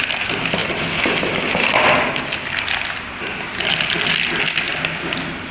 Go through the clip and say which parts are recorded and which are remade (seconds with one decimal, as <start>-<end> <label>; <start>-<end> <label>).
0.0-5.5 recorded